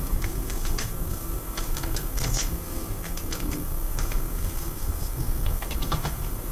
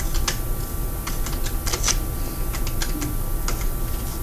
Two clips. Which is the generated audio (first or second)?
first